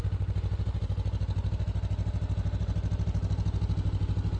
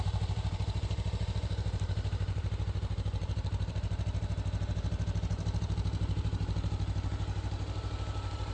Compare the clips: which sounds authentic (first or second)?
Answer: first